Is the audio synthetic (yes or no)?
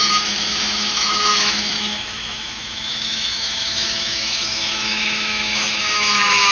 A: yes